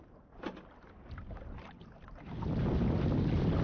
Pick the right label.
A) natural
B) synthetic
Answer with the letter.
A